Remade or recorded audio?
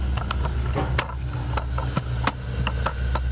recorded